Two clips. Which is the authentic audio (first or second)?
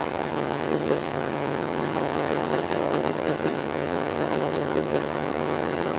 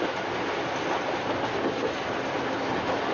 second